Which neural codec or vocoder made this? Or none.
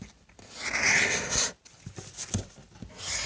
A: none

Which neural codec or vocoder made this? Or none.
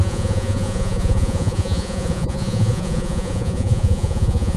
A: vocoder, Vocos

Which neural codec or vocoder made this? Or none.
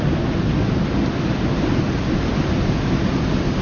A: none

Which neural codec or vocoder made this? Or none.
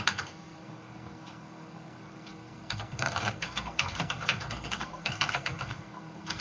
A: codec, SNAC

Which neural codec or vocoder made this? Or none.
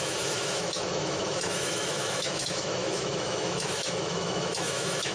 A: autoencoder, DAC-VAE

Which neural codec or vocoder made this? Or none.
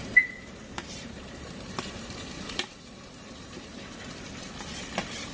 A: vocoder, BigVGAN v2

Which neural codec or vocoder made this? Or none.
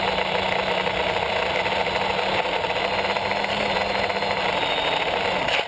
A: none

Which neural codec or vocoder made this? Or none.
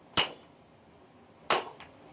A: none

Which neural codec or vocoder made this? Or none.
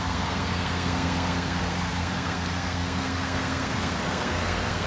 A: codec, SNAC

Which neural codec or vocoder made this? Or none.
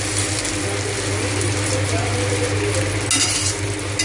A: none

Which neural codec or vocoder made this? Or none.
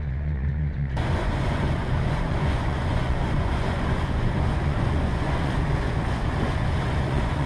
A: vocoder, Vocos